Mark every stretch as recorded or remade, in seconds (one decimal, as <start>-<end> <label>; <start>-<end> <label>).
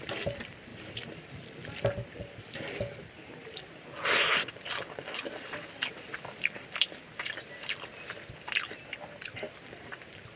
0.0-0.7 recorded; 0.7-5.0 remade; 5.0-5.9 recorded; 5.9-8.8 remade; 8.8-10.4 recorded